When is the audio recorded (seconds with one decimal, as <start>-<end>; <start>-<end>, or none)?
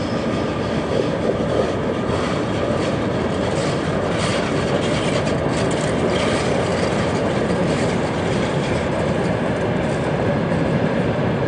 0.0-4.3; 4.9-6.7; 9.9-11.5